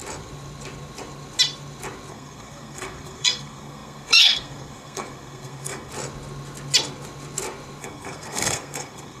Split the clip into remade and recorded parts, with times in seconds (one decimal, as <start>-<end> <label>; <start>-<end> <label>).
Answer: 0.0-2.1 recorded; 2.1-5.9 remade; 5.9-7.8 recorded; 7.8-9.2 remade